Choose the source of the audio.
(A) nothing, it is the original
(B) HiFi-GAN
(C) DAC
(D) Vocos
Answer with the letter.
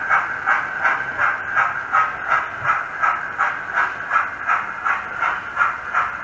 A